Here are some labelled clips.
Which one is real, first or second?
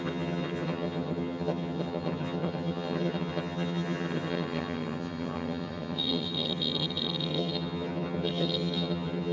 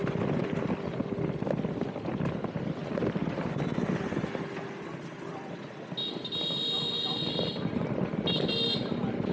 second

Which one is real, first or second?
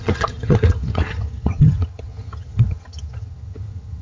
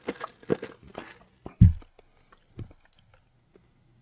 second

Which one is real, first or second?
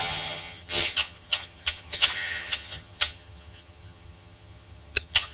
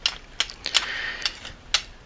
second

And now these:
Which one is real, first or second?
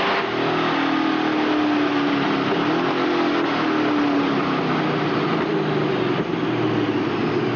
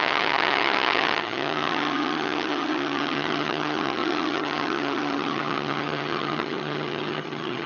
first